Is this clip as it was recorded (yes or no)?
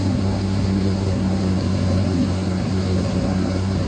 no